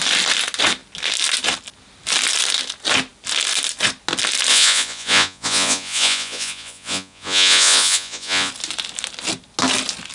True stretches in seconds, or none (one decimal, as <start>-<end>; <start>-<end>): 0.0-4.5; 8.5-10.1